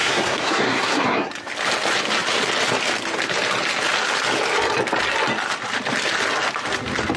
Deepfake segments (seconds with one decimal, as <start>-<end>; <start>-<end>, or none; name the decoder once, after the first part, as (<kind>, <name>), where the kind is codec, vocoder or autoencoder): 0.0-1.3 (codec, SNAC)